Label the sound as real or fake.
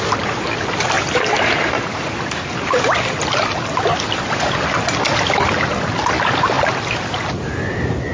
real